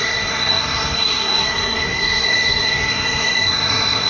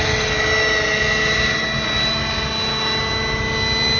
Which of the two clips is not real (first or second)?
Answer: first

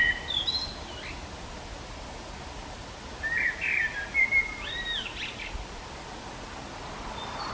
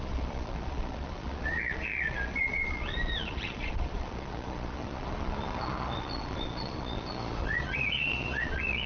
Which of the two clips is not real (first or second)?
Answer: second